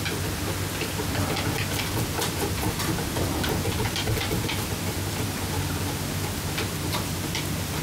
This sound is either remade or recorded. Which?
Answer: recorded